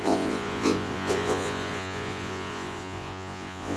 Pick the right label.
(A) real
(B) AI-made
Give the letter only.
B